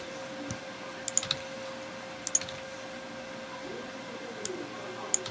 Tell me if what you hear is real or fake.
real